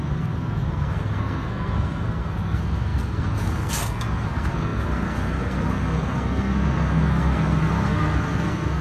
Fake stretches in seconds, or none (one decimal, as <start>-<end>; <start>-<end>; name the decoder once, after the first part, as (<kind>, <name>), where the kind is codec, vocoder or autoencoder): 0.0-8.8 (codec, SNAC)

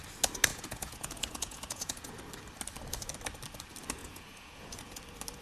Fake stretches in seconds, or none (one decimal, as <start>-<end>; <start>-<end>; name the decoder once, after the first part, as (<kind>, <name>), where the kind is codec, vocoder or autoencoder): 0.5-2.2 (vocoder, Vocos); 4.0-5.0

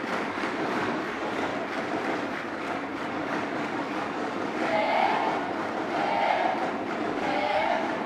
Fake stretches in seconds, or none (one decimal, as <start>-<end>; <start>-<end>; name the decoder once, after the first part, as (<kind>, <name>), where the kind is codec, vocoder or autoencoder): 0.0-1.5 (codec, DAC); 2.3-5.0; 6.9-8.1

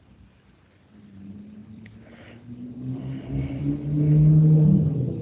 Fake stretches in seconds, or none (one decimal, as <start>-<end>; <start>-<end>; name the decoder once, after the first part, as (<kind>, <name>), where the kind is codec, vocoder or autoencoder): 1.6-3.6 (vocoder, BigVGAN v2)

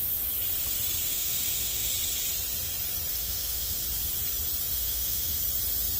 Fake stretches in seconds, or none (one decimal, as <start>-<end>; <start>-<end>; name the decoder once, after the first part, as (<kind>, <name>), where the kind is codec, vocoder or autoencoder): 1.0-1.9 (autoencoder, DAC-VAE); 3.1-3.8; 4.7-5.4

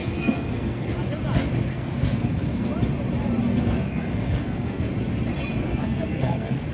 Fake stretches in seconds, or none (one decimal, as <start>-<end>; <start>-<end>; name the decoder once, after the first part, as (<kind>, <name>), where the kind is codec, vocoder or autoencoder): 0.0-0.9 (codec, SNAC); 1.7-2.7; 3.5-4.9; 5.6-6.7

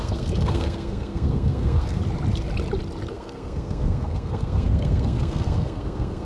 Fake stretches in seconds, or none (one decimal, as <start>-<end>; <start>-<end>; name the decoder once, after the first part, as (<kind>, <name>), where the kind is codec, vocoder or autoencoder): 0.0-2.0 (codec, SNAC); 3.1-6.2

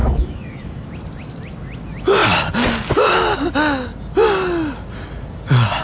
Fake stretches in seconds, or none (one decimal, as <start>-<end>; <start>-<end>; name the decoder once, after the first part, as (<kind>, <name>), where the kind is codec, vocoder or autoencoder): 0.0-0.9 (autoencoder, DAC-VAE)